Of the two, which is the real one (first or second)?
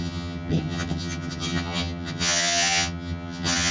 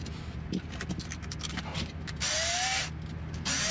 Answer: second